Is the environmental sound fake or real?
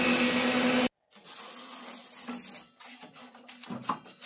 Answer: real